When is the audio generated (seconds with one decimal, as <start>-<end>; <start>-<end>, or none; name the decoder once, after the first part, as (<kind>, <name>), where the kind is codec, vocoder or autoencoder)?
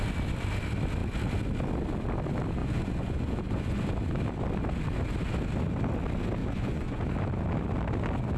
2.6-3.8 (vocoder, Vocos); 6.4-7.0